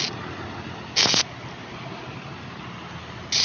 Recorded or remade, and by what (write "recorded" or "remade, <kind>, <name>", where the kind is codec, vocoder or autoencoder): recorded